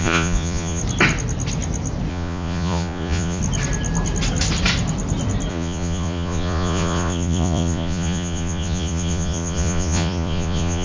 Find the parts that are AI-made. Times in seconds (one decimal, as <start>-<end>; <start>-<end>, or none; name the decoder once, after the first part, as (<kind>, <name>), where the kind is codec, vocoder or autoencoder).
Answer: 0.0-0.8 (vocoder, Vocos); 2.1-3.4; 5.5-10.8